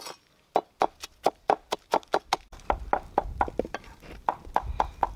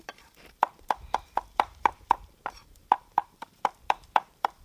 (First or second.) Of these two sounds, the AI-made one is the second